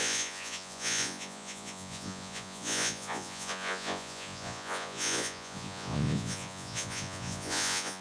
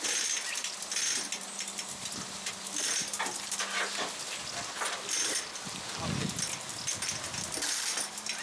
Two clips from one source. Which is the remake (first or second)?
first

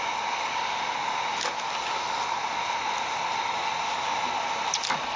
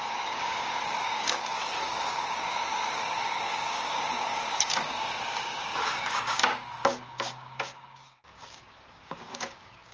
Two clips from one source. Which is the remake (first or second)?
second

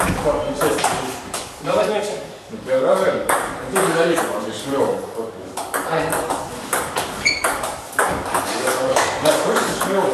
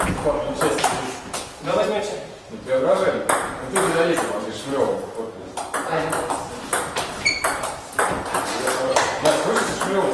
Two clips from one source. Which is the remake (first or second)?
first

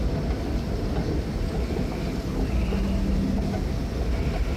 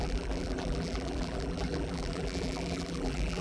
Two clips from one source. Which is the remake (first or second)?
second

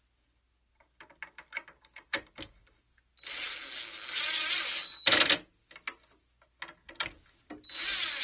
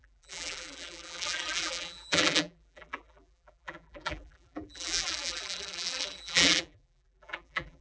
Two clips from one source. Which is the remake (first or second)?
second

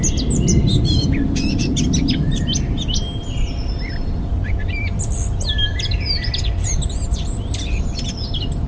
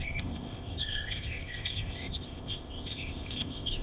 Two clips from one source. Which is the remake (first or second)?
second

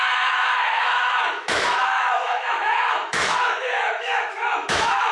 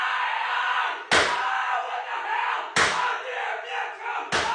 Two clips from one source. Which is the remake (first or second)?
first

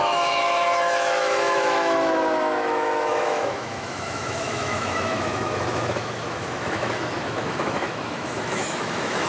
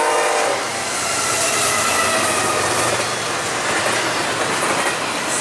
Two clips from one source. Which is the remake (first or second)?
first